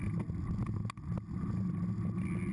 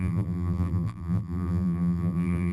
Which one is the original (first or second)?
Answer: first